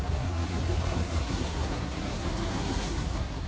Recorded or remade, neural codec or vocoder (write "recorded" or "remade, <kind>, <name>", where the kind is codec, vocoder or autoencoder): remade, codec, SNAC